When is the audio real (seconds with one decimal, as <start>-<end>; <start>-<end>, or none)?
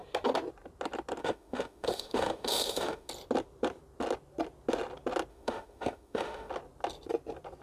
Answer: 0.0-1.2; 3.1-5.3; 6.5-7.6